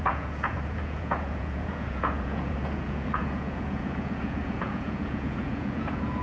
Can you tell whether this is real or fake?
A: fake